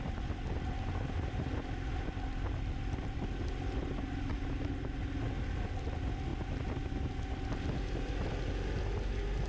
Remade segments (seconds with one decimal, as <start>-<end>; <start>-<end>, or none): none

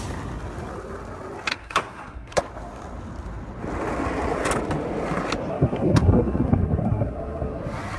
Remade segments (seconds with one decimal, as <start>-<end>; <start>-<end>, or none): 1.5-2.4; 5.5-7.6

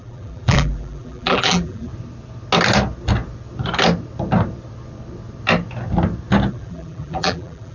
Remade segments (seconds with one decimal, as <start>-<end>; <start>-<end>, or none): 0.0-1.9; 6.5-7.7

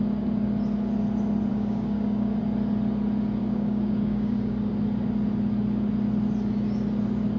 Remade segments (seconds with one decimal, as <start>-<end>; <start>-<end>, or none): 1.5-2.4; 3.4-4.7

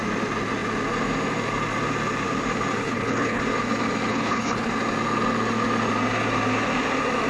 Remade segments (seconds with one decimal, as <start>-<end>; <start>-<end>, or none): 2.8-3.4; 4.1-4.7

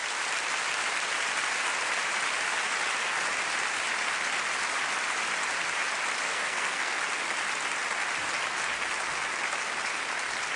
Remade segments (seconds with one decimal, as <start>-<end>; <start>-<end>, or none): 6.3-7.0

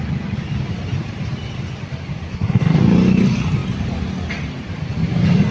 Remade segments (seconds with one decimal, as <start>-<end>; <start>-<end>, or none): 2.3-2.8

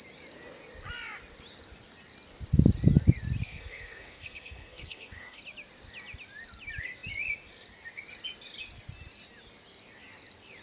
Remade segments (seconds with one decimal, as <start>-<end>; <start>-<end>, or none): 3.4-5.4